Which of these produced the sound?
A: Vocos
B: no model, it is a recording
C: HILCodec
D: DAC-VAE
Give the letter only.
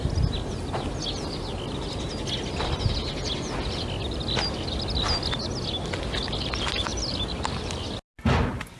B